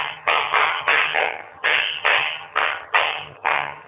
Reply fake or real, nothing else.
fake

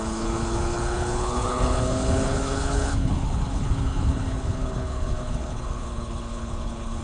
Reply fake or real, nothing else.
fake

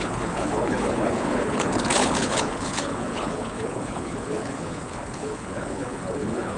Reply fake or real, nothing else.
fake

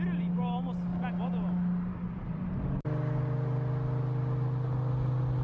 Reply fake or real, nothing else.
real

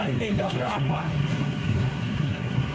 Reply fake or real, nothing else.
fake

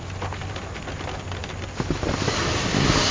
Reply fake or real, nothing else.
real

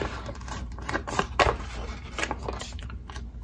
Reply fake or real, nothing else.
fake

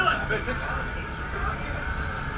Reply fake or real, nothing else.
real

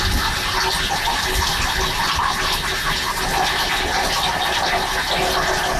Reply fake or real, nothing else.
real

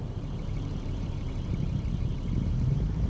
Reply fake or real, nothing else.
fake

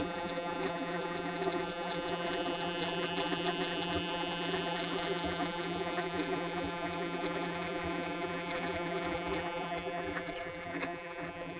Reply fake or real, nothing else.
fake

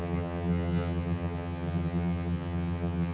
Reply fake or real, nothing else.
fake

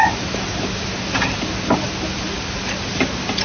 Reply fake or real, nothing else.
real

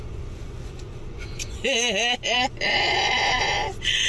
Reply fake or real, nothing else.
fake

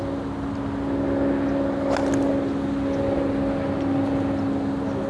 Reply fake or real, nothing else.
real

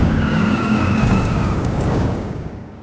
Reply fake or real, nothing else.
fake